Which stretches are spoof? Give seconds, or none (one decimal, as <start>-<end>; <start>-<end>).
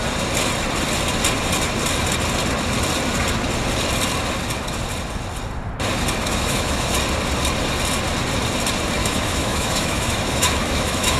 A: 6.2-6.9; 9.0-11.2